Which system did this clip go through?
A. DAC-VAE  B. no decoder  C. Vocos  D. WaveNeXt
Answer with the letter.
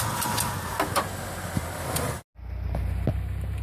B